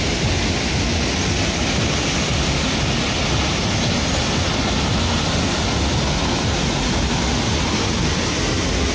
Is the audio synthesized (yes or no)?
no